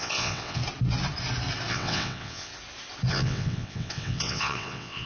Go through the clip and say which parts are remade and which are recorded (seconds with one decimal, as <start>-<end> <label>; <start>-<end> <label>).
0.0-0.6 remade; 0.6-1.7 recorded; 1.7-2.5 remade; 2.5-3.1 recorded; 3.1-5.1 remade